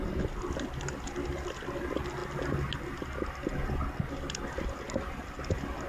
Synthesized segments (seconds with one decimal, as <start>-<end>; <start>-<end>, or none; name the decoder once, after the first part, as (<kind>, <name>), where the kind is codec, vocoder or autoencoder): none

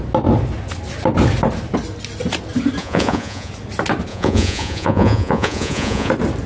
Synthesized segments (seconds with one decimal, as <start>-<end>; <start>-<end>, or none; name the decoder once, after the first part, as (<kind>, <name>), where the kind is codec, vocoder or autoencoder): 2.8-3.5 (vocoder, Vocos); 4.1-6.1

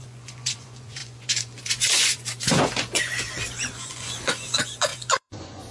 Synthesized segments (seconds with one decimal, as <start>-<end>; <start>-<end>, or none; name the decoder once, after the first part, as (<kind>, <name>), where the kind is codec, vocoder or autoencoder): 0.0-5.7 (vocoder, Vocos)